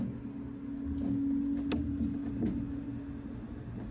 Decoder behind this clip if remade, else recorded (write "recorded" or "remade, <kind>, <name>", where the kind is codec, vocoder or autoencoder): recorded